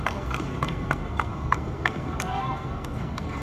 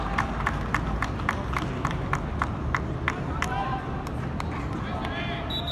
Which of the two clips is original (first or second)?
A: second